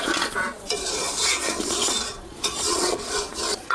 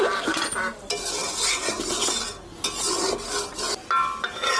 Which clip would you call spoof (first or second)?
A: first